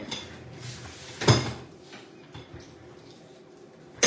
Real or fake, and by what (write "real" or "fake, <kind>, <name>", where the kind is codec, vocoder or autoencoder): real